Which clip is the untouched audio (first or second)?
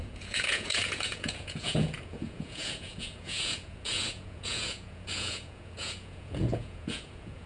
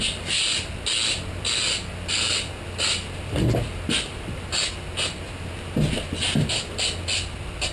second